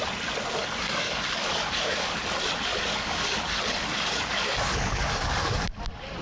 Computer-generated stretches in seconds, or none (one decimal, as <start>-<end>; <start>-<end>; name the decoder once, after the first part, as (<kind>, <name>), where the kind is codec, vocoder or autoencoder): 0.6-2.2 (codec, DAC); 2.7-5.6